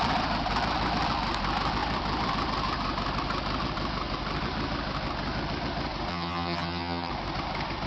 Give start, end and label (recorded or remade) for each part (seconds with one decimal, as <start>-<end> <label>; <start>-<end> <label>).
0.0-6.1 recorded; 6.1-7.1 remade; 7.1-7.9 recorded